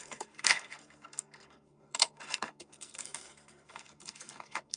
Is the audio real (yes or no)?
no